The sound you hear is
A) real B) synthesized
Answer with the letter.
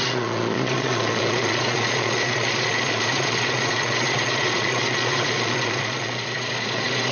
B